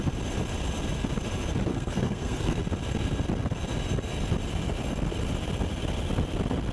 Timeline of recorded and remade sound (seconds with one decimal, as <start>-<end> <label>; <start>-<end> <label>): 0.0-1.7 recorded; 1.7-2.6 remade; 2.6-6.7 recorded